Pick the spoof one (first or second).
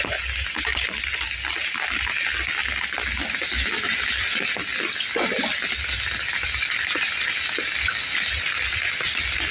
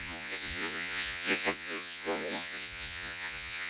second